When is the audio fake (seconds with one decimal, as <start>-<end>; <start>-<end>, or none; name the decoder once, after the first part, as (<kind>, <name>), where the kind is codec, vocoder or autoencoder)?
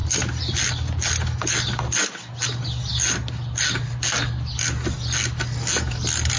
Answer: none